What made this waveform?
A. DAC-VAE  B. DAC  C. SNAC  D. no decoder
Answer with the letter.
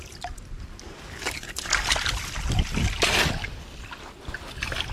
D